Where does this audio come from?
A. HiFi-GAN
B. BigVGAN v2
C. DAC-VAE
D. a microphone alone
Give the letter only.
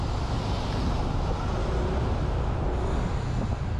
D